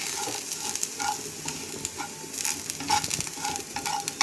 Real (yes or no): yes